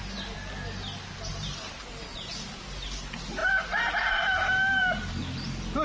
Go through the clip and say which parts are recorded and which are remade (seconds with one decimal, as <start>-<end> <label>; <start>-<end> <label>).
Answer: 0.0-1.3 recorded; 1.3-2.3 remade; 2.3-3.4 recorded; 3.4-5.2 remade; 5.2-5.8 recorded

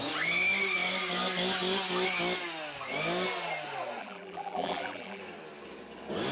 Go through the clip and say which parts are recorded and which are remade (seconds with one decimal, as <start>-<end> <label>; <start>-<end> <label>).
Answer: 0.0-4.0 recorded; 4.0-5.2 remade; 5.2-6.3 recorded

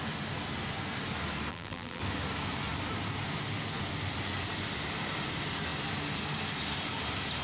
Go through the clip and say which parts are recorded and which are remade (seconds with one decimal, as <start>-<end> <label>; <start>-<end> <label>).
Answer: 0.0-1.5 recorded; 1.5-2.0 remade; 2.0-7.4 recorded

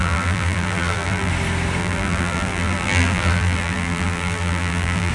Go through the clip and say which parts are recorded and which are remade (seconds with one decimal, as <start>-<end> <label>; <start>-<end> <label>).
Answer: 0.0-1.3 remade; 1.3-1.8 recorded; 1.8-5.1 remade

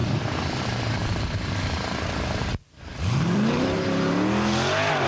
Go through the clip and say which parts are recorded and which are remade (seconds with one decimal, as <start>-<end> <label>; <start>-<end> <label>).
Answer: 0.0-0.6 remade; 0.6-1.0 recorded; 1.0-4.1 remade; 4.1-5.1 recorded